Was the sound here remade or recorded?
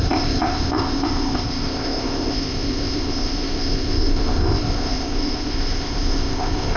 remade